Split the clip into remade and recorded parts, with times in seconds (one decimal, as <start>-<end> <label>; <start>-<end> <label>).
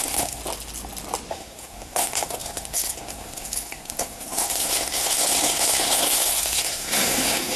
0.0-0.4 remade; 0.4-1.3 recorded; 1.3-7.6 remade